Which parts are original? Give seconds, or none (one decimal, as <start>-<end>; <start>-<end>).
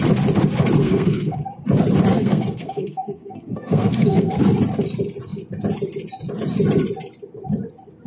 0.0-0.8; 1.4-2.1; 4.4-8.1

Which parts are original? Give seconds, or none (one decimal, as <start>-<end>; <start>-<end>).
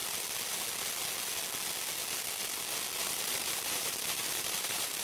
0.0-3.0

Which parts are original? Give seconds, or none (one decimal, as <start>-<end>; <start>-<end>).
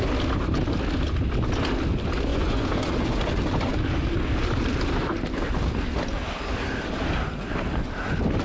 0.0-2.3; 3.2-8.4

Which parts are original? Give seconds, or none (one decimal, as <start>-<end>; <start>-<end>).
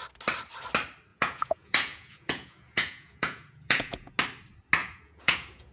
0.0-1.1; 4.1-4.8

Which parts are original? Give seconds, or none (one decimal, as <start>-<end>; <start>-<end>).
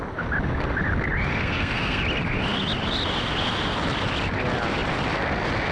0.0-1.3; 2.0-5.7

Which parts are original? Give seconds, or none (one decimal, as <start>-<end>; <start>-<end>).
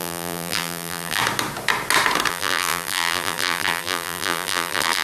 1.2-2.3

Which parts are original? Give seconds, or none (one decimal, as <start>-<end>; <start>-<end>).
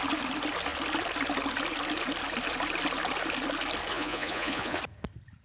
0.0-3.9; 4.8-5.4